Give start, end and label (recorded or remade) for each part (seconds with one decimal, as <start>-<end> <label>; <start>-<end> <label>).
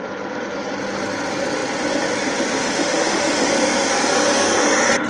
0.0-2.6 recorded; 2.6-3.5 remade; 3.5-5.1 recorded